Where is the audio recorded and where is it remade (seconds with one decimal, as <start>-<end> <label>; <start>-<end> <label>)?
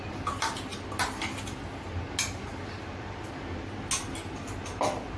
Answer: 0.0-5.2 recorded